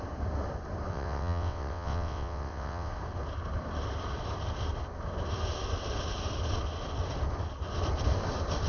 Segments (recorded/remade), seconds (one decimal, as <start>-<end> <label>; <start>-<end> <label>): 0.0-0.9 recorded; 0.9-2.9 remade; 2.9-8.7 recorded